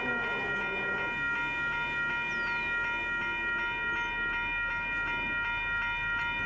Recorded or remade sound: recorded